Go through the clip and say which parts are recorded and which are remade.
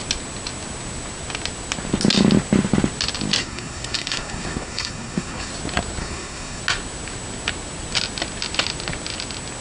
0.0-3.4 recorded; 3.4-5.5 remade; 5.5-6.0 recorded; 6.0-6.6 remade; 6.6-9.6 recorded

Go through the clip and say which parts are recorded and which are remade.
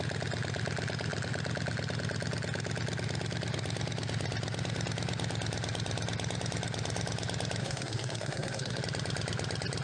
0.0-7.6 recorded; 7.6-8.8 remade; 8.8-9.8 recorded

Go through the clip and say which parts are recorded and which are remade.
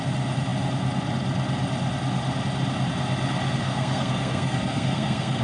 0.0-3.6 recorded; 3.6-5.4 remade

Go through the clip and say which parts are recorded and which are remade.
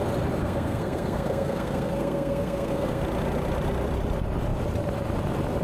0.0-0.4 recorded; 0.4-3.0 remade; 3.0-5.6 recorded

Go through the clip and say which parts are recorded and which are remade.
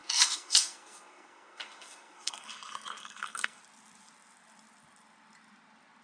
0.0-3.6 remade; 3.6-6.0 recorded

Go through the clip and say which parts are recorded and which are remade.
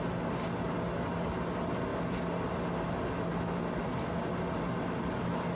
0.0-5.6 recorded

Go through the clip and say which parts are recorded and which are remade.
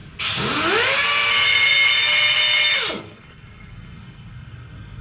0.0-3.0 recorded; 3.0-5.0 remade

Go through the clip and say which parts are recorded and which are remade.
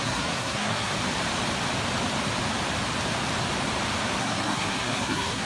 0.0-0.9 remade; 0.9-4.2 recorded; 4.2-5.5 remade